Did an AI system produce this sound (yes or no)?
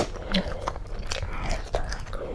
no